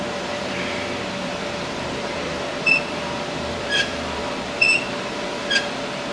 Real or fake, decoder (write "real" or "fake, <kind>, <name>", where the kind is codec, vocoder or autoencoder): fake, vocoder, BigVGAN v2